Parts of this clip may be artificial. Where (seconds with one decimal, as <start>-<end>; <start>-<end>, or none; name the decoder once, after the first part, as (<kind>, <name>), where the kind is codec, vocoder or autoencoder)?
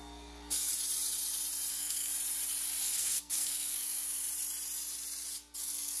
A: 0.0-0.7 (codec, SNAC); 1.7-2.1; 2.8-4.2; 5.6-6.0